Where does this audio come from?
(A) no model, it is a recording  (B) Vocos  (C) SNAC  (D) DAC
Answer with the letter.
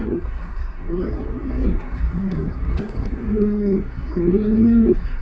C